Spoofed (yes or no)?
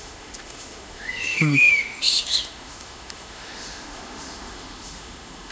yes